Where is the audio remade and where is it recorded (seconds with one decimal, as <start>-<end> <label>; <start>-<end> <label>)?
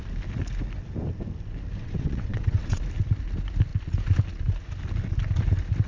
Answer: 0.0-1.8 recorded; 1.8-2.8 remade; 2.8-5.9 recorded